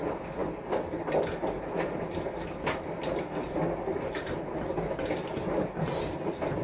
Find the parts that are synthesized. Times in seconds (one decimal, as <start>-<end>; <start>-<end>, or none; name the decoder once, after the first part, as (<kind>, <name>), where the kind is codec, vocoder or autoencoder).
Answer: none